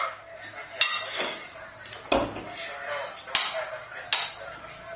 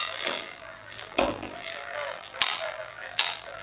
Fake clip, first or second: second